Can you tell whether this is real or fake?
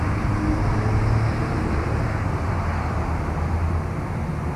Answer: real